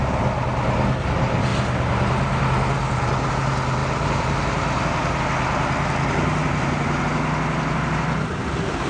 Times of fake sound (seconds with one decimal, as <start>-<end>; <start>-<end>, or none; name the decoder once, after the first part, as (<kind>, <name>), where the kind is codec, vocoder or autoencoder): 3.8-5.2 (vocoder, BigVGAN v2); 6.4-7.0